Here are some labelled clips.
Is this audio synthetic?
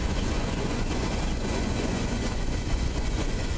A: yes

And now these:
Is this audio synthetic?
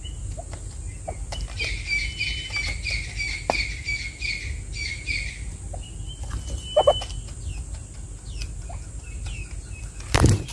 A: no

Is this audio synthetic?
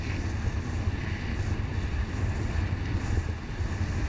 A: no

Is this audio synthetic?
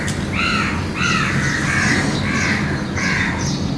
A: no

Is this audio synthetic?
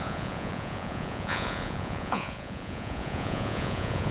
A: yes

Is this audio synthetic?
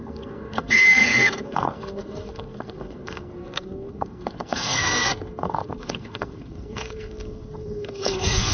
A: yes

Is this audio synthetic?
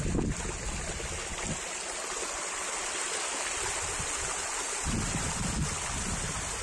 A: no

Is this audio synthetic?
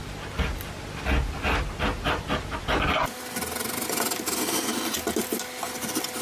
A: no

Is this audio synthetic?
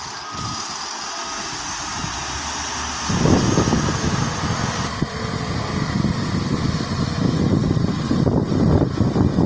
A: no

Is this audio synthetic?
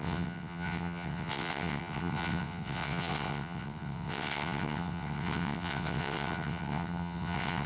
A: yes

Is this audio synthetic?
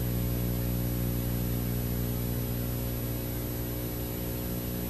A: no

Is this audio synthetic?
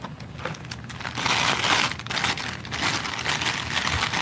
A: no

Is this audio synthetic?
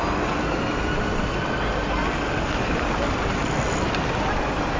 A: no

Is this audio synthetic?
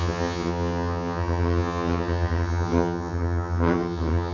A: yes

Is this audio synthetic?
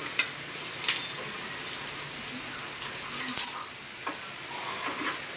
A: no